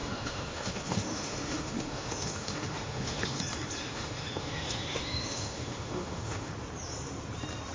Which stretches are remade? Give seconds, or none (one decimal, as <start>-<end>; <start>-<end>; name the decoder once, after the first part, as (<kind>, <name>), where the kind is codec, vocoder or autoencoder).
0.0-3.4 (autoencoder, DAC-VAE); 3.8-6.5

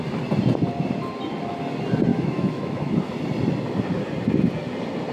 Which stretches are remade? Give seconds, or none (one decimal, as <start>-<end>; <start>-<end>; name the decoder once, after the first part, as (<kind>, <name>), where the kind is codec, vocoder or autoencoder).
2.1-2.9 (autoencoder, DAC-VAE)

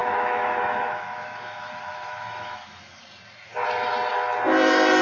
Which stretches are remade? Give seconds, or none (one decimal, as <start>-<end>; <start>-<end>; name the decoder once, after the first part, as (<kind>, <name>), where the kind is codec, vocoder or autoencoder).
0.0-3.0 (autoencoder, DAC-VAE)

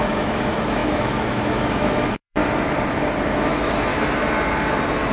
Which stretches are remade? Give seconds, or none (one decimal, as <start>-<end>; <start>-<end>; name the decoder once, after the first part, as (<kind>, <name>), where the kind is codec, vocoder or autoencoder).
0.0-2.4 (autoencoder, DAC-VAE); 3.2-3.9

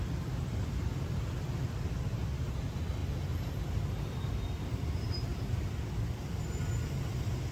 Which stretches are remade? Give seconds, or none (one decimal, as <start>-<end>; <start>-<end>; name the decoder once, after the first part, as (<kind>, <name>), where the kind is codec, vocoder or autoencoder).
none

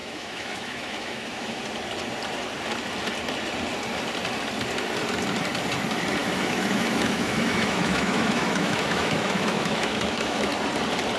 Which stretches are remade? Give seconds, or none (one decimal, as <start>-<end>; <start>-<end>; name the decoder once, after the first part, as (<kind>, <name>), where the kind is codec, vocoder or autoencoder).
0.0-1.6 (autoencoder, DAC-VAE); 6.2-10.5